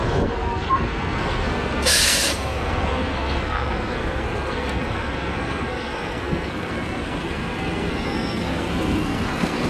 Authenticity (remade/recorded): remade